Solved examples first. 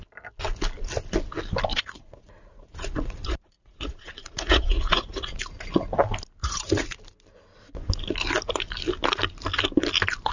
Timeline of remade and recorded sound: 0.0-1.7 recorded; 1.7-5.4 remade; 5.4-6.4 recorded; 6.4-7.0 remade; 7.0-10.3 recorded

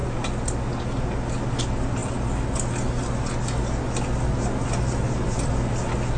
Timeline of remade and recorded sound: 0.0-6.2 recorded

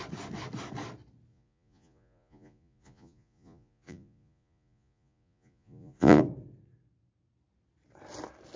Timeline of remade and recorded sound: 0.0-1.3 recorded; 1.3-6.2 remade; 6.2-8.6 recorded

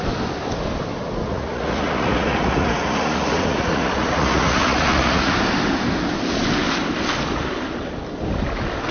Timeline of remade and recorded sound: 0.0-1.2 recorded; 1.2-5.3 remade; 5.3-8.9 recorded

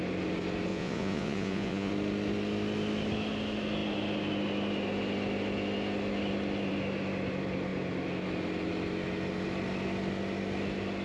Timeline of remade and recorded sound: 0.0-0.7 recorded; 0.7-1.9 remade; 1.9-11.0 recorded

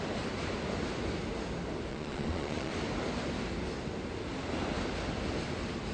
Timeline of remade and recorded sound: 0.0-1.9 recorded; 1.9-2.7 remade; 2.7-5.9 recorded

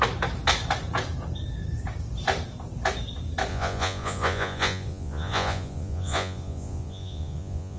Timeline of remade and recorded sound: 0.0-3.5 recorded; 3.5-7.8 remade

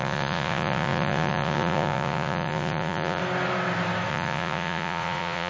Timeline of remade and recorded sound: 0.0-3.2 remade; 3.2-4.1 recorded; 4.1-5.5 remade